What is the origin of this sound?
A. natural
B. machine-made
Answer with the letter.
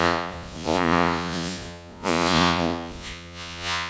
B